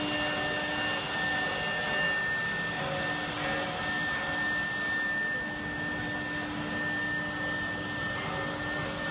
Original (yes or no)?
yes